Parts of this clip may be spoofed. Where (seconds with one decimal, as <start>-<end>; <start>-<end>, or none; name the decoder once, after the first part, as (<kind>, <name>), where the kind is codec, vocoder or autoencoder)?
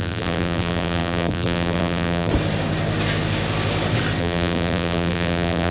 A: 0.0-2.3 (vocoder, BigVGAN v2); 4.2-5.7